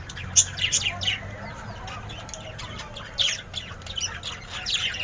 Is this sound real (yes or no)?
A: yes